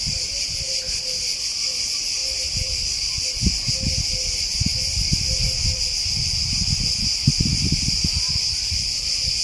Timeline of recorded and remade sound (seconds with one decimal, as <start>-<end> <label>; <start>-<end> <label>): 0.0-9.4 remade